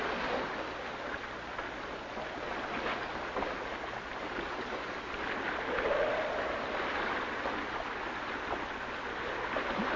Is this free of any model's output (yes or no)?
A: yes